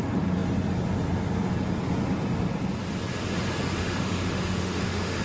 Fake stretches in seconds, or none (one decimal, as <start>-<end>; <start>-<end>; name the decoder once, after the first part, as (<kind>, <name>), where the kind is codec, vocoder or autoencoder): 3.8-5.2 (autoencoder, DAC-VAE)